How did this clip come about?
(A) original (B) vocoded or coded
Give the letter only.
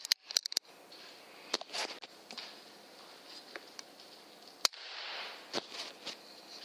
A